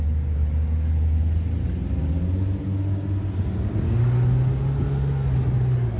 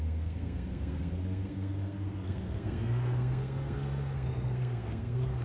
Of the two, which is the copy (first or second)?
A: second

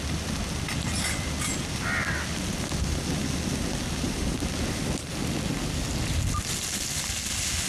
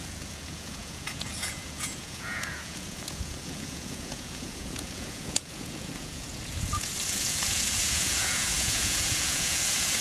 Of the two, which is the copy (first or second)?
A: second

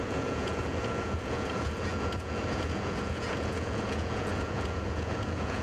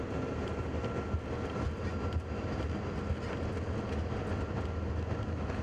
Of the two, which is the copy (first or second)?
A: first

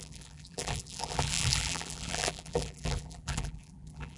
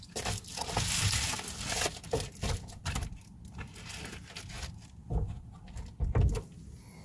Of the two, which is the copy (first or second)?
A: first